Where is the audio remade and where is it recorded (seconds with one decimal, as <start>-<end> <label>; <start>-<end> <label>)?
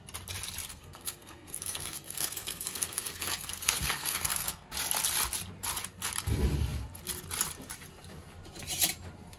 0.0-0.7 recorded; 0.7-4.7 remade; 4.7-9.4 recorded